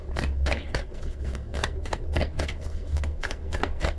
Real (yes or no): no